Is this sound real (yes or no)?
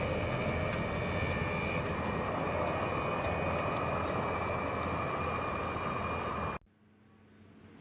yes